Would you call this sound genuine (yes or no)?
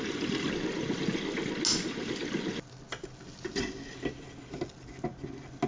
yes